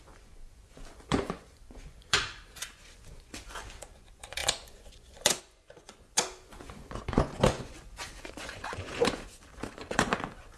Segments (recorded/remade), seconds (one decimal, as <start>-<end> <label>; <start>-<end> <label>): 0.0-10.6 remade